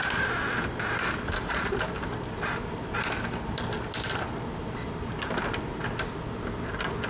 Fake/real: real